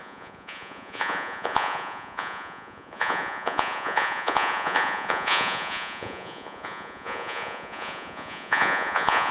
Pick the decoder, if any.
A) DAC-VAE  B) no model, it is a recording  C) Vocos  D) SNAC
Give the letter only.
C